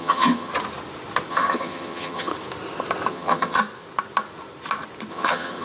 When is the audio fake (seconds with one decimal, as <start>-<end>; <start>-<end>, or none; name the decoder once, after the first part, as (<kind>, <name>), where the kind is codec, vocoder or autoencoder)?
0.0-0.5 (vocoder, HiFi-GAN); 1.3-2.3; 3.1-3.6; 5.1-5.6

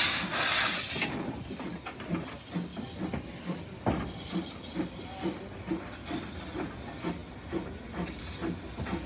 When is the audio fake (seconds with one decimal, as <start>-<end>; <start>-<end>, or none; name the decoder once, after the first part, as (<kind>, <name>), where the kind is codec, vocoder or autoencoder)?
none

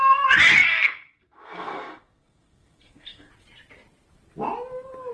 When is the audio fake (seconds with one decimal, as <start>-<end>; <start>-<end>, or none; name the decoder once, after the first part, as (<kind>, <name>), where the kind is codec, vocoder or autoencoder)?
0.7-3.3 (codec, SNAC)

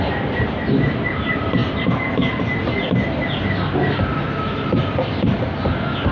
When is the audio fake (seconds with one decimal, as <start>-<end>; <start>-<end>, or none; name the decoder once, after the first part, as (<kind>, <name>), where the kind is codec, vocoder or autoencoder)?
none

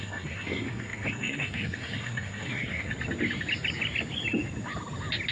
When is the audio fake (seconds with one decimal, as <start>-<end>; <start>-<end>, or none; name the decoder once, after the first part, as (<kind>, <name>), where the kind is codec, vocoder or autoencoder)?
0.0-2.9 (codec, SNAC)

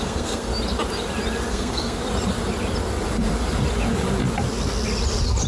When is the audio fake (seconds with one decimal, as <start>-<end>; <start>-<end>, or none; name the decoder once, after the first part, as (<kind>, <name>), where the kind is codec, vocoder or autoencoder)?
0.0-0.5 (codec, SNAC); 1.5-2.0